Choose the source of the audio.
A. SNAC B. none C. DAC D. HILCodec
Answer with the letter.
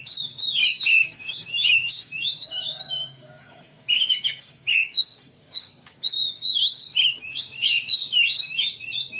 C